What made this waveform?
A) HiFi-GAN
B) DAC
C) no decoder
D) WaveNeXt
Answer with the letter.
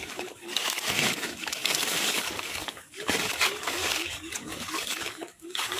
B